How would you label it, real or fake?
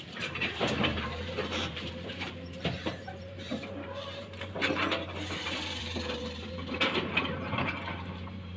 fake